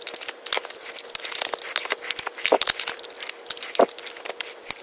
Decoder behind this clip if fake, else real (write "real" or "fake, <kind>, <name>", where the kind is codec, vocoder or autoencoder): real